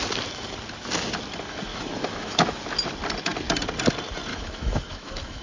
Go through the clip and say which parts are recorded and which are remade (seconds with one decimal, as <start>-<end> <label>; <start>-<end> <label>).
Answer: 0.0-1.7 recorded; 1.7-2.6 remade; 2.6-4.3 recorded; 4.3-5.4 remade